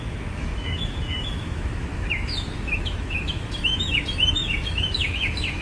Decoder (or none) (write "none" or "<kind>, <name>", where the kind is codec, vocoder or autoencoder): autoencoder, DAC-VAE